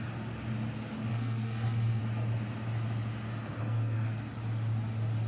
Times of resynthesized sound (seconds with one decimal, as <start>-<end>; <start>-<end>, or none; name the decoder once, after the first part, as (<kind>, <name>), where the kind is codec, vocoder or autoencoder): 1.1-2.0 (codec, SNAC); 3.6-4.3